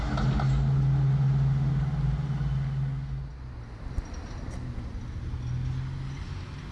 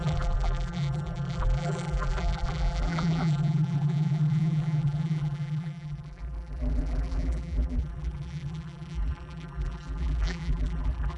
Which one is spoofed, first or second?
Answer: second